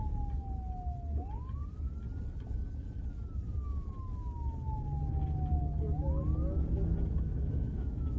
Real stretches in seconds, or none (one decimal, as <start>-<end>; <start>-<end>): 0.0-7.3